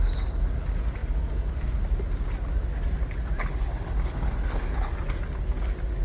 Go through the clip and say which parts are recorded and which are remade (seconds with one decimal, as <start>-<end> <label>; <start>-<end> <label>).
0.0-3.4 recorded; 3.4-4.9 remade; 4.9-6.0 recorded